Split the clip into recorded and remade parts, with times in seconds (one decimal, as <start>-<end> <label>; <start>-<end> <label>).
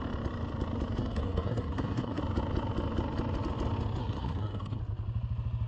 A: 0.0-1.0 recorded; 1.0-2.2 remade; 2.2-4.0 recorded; 4.0-4.8 remade; 4.8-5.7 recorded